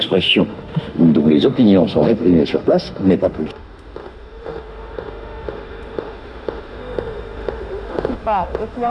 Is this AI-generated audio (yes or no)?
yes